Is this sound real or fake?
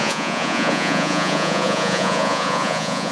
fake